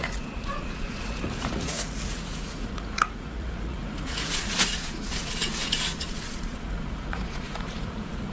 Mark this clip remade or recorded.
remade